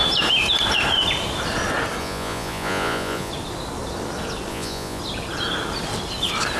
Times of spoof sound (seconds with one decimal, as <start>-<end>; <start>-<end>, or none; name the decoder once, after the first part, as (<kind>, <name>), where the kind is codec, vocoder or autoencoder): 2.0-3.3 (vocoder, Vocos); 4.5-5.0